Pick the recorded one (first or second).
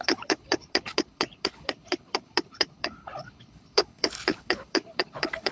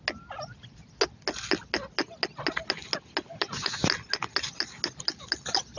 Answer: second